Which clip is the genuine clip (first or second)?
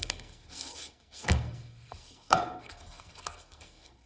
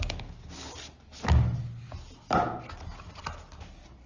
second